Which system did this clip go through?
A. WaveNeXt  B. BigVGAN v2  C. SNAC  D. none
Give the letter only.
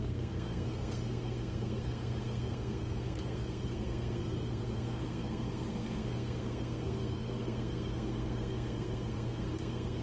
C